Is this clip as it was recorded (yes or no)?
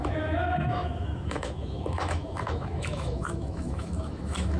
no